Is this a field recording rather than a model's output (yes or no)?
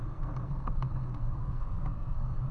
no